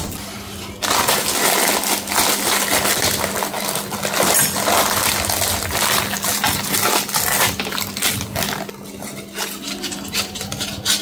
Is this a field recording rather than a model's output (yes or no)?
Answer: yes